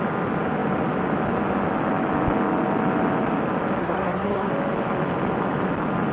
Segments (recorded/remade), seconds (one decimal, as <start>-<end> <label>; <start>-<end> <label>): 0.0-3.8 recorded; 3.8-4.5 remade; 4.5-6.1 recorded